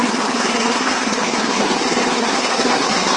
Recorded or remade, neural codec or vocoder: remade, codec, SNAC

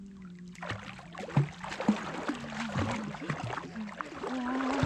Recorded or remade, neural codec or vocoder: recorded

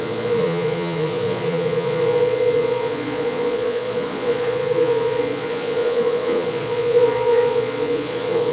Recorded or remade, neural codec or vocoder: remade, vocoder, Vocos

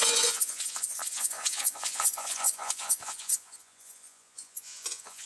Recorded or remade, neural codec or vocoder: remade, vocoder, Vocos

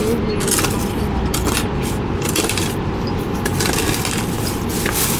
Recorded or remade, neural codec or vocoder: recorded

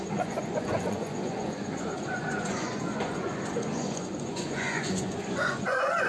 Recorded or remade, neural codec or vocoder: remade, vocoder, Vocos